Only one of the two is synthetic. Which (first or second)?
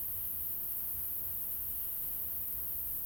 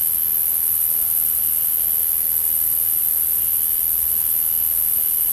first